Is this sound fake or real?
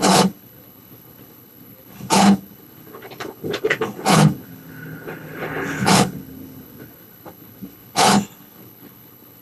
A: fake